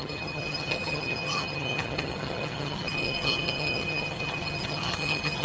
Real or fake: fake